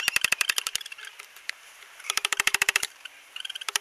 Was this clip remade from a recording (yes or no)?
yes